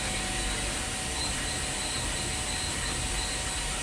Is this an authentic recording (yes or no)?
yes